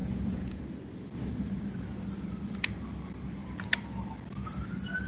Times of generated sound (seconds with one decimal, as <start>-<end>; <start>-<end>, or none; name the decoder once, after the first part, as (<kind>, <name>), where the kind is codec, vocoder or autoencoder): 0.0-0.6 (vocoder, Vocos)